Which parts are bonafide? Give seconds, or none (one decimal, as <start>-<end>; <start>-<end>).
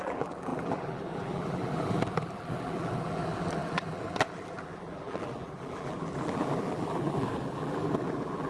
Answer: none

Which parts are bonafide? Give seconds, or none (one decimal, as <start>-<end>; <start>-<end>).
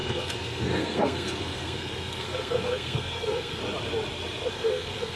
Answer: 3.6-4.5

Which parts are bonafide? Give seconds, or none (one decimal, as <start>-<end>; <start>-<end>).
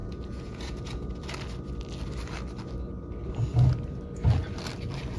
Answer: 1.2-5.2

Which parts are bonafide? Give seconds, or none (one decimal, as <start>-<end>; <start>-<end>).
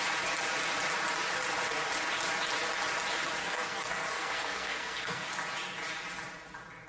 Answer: 0.0-3.4; 5.3-6.9